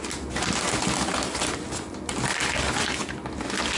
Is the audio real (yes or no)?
yes